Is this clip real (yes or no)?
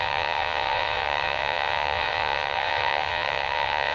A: no